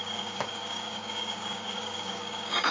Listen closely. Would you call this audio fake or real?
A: fake